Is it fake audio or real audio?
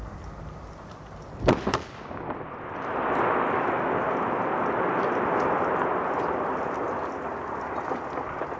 real